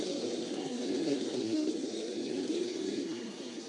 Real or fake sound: fake